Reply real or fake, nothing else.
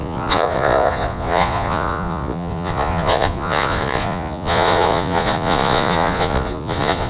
fake